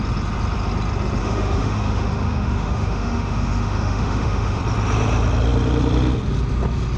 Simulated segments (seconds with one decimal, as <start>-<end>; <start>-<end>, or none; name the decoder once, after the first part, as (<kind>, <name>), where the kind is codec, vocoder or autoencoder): 1.2-4.6 (autoencoder, DAC-VAE)